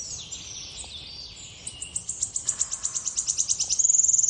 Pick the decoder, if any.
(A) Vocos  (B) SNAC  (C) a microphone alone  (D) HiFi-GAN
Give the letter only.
C